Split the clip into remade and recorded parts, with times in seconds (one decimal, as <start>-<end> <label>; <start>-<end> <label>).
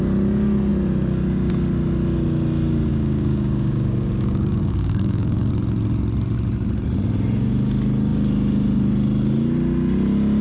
0.0-2.9 recorded; 2.9-5.5 remade; 5.5-10.4 recorded